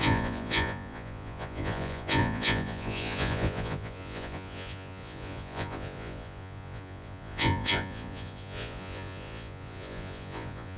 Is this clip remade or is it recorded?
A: remade